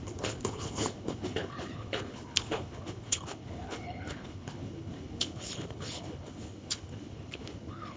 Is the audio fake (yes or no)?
yes